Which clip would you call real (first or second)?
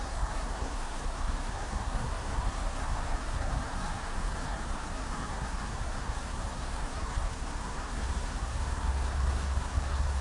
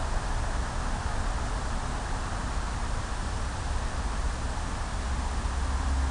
second